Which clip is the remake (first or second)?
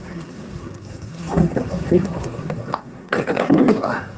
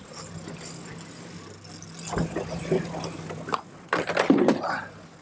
first